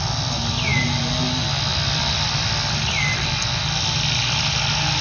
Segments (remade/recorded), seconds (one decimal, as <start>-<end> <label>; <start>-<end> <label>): 0.0-5.0 recorded